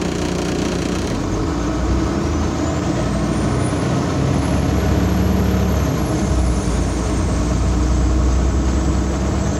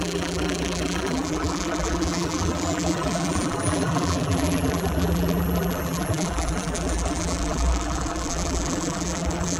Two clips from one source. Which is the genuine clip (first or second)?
first